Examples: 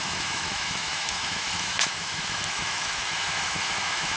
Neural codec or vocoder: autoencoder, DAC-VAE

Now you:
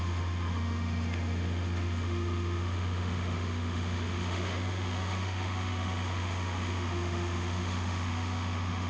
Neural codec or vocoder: autoencoder, DAC-VAE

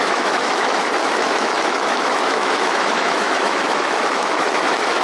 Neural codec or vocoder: autoencoder, DAC-VAE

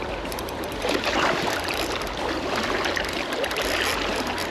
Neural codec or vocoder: none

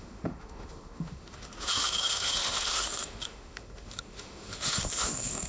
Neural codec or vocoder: autoencoder, DAC-VAE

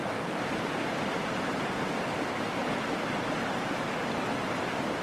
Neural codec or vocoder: none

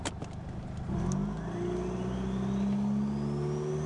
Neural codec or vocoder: none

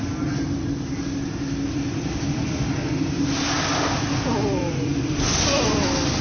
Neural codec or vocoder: none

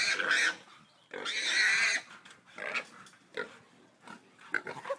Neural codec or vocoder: none